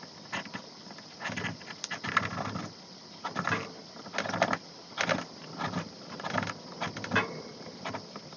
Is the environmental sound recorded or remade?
recorded